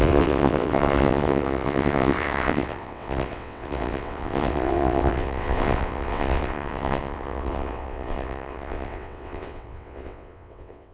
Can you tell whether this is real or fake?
fake